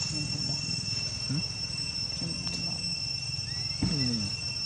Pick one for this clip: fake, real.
real